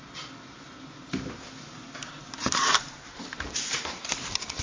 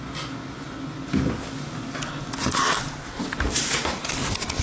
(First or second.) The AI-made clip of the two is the first